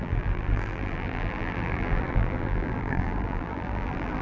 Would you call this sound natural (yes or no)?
no